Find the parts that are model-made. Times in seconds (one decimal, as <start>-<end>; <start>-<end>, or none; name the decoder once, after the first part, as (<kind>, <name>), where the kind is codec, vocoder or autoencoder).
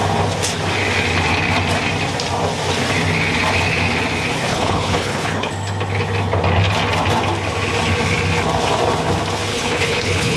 4.5-5.5 (codec, HILCodec); 9.5-10.4